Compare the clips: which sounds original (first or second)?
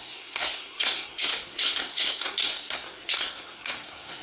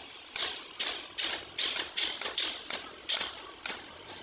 second